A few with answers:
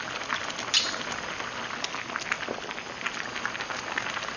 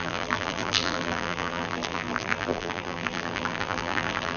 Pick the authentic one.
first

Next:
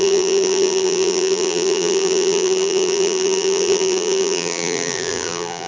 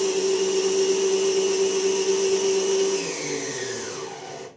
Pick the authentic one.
second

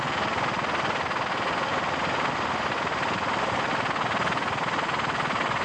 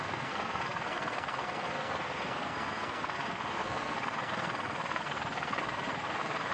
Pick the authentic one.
first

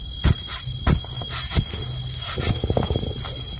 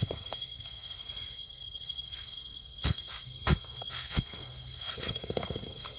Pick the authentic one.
first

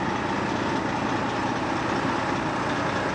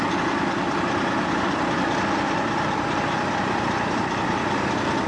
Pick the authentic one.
first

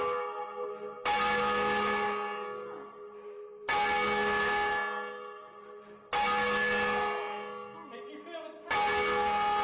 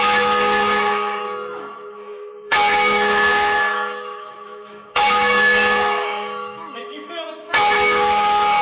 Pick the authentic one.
first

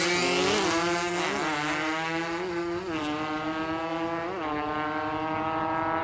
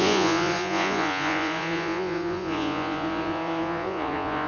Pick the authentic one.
first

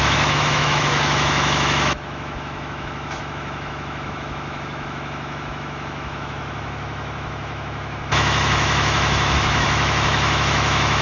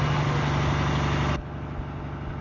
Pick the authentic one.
second